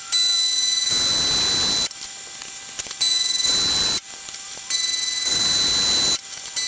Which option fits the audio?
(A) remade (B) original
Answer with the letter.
B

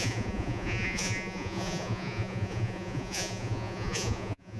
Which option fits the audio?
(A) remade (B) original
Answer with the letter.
A